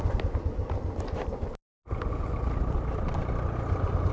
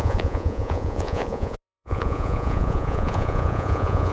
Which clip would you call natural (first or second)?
first